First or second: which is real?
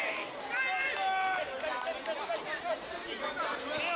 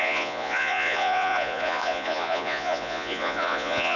first